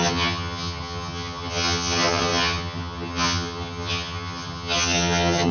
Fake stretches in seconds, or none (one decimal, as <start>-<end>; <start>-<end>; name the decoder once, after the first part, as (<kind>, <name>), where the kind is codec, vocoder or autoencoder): 0.0-5.5 (vocoder, HiFi-GAN)